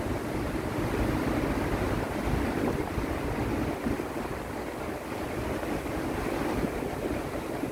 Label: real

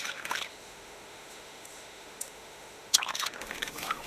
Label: fake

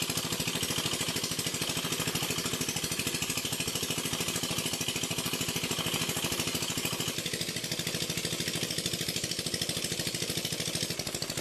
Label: real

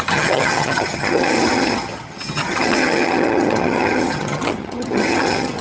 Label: fake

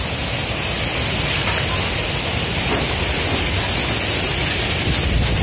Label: real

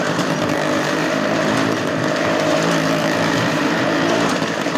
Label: fake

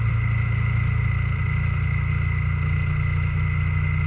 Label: real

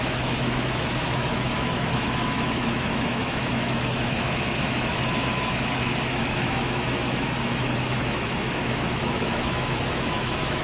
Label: fake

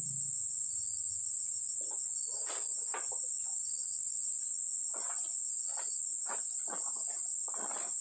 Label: real